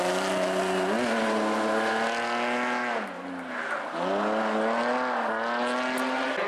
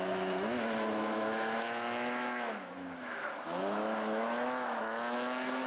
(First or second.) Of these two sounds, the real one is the first